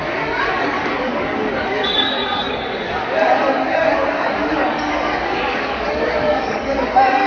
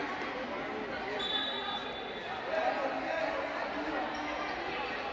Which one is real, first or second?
second